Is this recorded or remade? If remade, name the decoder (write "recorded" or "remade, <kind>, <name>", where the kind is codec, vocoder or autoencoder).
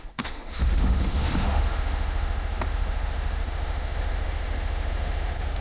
remade, autoencoder, DAC-VAE